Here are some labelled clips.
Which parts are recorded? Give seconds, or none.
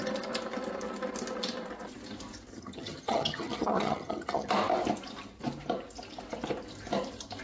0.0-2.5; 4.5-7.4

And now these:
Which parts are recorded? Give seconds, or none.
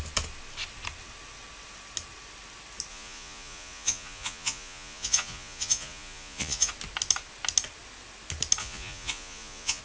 0.0-2.9; 6.7-8.6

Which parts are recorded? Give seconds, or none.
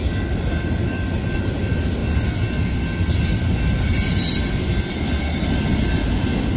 0.0-6.6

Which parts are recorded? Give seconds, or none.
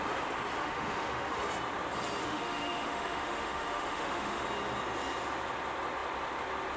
0.0-0.6; 1.4-2.2; 4.4-6.8